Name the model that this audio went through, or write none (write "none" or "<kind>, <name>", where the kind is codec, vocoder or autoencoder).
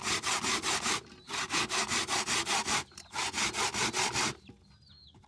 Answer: none